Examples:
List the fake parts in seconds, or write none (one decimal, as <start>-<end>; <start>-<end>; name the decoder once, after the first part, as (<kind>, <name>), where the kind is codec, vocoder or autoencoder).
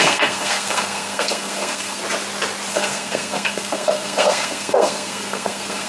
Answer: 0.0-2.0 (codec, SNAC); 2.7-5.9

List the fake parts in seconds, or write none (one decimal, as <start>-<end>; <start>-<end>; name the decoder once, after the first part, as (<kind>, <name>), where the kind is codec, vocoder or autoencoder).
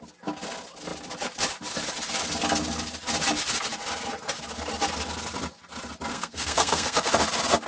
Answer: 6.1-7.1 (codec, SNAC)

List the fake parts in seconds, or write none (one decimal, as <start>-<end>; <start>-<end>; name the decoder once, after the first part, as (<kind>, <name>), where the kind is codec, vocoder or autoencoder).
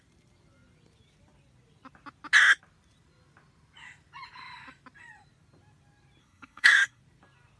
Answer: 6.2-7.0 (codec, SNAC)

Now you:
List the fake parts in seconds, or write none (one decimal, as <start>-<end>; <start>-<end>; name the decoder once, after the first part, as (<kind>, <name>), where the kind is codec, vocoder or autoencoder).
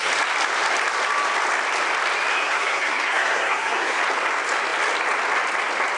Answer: 2.4-4.0 (codec, SNAC)